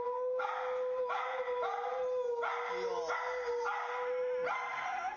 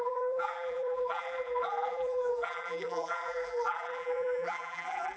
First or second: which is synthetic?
second